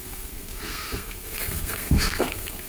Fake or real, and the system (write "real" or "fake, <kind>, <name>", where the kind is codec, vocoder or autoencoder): fake, codec, SNAC